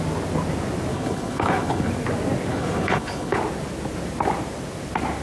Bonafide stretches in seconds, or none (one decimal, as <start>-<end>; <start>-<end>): 0.0-0.9; 1.9-2.5; 3.4-5.2